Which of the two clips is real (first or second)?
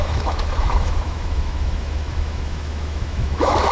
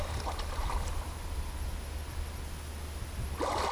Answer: second